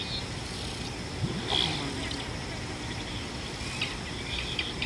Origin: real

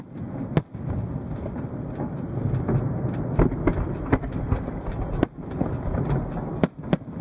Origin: real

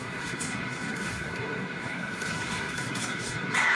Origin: fake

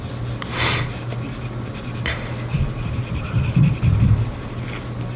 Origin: real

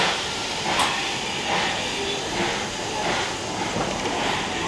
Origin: real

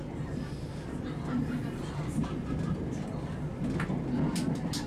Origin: real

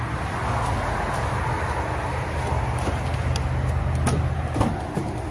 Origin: real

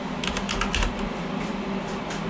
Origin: real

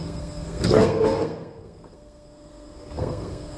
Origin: fake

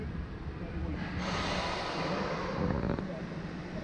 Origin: real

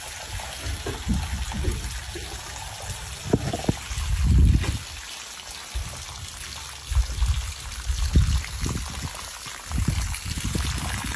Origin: real